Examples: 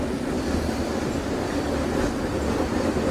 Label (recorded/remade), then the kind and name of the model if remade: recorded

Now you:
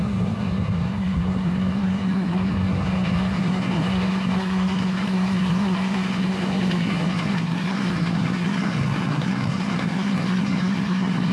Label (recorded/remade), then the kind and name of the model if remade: remade, codec, SNAC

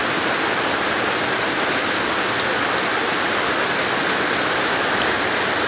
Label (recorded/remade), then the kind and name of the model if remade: recorded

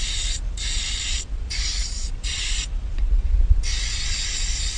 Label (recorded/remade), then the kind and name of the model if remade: recorded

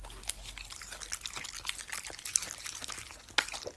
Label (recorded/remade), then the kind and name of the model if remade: recorded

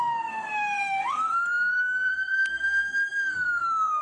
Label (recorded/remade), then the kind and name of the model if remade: remade, codec, SNAC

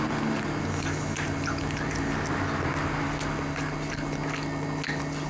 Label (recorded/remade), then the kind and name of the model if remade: recorded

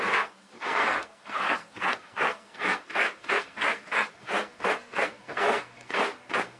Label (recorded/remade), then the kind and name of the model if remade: remade, codec, SNAC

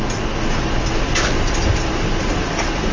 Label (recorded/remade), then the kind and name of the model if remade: recorded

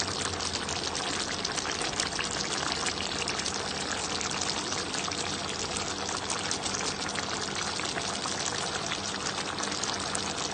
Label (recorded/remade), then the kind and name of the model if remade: recorded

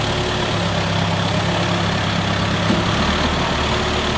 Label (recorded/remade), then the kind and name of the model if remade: recorded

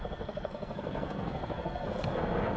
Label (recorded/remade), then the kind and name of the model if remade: remade, codec, SNAC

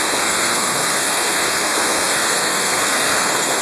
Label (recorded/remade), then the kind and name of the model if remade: remade, codec, SNAC